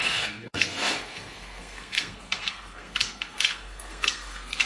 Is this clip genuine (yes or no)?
no